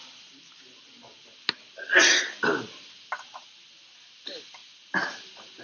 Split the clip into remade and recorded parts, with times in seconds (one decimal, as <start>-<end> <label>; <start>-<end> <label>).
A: 0.0-5.6 recorded